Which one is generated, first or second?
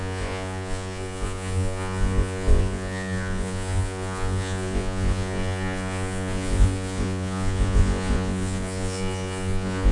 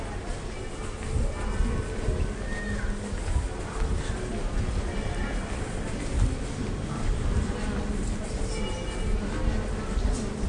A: first